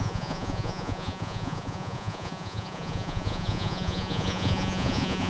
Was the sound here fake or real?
fake